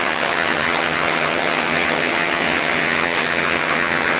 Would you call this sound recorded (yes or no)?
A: no